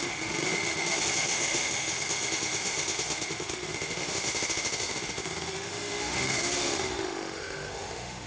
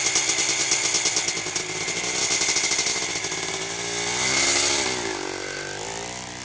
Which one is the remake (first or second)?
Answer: first